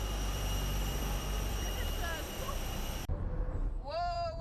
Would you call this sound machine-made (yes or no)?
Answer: yes